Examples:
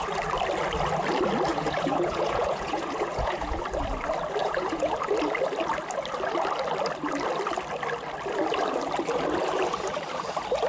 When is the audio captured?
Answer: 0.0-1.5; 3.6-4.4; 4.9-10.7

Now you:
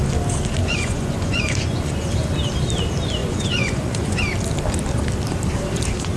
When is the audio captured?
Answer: 0.0-0.6; 2.1-3.2; 4.2-6.2

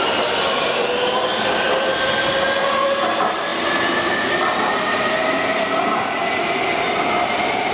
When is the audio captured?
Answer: 0.0-7.7

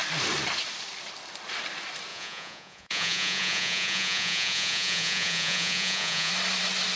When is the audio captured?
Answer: 0.0-2.1; 6.3-7.0

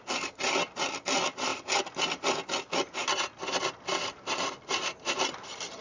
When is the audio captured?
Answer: 0.0-5.8